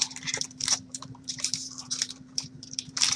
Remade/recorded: remade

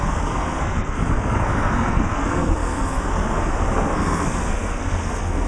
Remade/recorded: remade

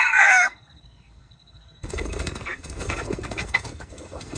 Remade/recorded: remade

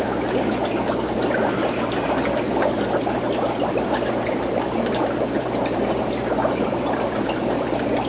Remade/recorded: remade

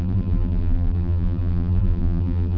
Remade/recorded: remade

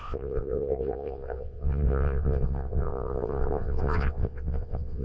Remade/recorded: remade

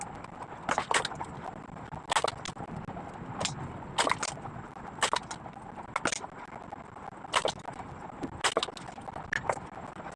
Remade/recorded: recorded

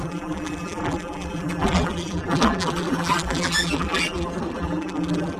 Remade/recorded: remade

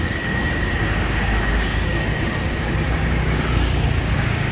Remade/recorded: remade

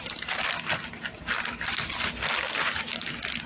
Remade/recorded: recorded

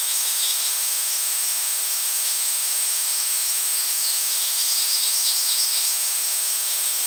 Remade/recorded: remade